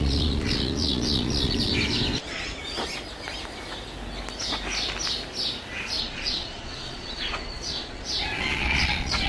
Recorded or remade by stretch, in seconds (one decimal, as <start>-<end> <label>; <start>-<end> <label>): 0.0-1.7 remade; 1.7-2.2 recorded; 2.2-2.6 remade; 2.6-6.0 recorded; 6.0-9.3 remade